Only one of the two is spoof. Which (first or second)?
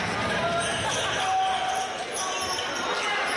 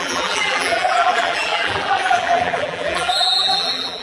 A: second